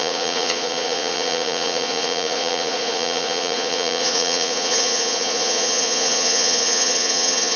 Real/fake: fake